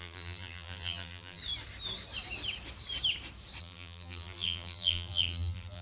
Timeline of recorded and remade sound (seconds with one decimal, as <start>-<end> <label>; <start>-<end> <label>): 0.0-1.4 remade; 1.4-3.6 recorded; 3.6-5.8 remade